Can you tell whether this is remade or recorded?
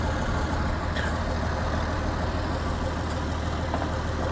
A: recorded